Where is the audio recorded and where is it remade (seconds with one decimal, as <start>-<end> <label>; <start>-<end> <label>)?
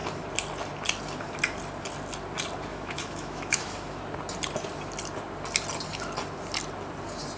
0.0-2.7 recorded; 2.7-4.0 remade; 4.0-7.4 recorded